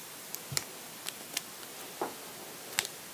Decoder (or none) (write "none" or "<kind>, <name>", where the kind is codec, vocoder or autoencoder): none